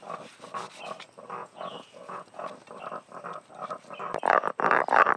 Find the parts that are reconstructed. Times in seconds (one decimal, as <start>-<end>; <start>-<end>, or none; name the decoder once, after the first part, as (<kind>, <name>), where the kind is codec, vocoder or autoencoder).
1.4-2.5 (vocoder, Vocos)